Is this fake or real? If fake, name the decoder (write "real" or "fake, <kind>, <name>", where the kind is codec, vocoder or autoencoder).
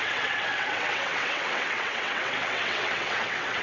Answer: fake, vocoder, WaveNeXt